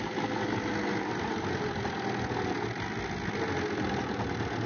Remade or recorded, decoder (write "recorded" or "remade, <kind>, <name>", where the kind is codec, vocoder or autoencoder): recorded